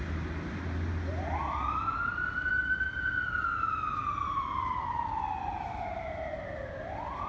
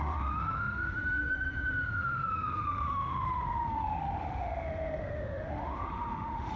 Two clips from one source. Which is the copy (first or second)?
second